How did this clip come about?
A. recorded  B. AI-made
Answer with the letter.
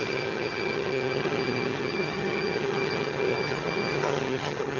B